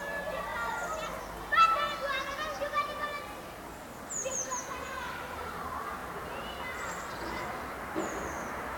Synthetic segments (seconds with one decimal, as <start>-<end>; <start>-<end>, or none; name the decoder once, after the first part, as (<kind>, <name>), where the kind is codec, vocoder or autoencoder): none